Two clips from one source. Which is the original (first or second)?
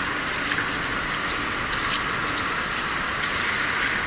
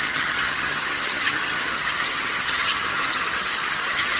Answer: first